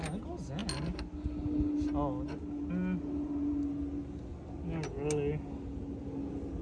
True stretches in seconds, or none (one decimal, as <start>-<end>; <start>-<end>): 0.0-6.6